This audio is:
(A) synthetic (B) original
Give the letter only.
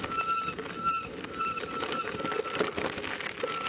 B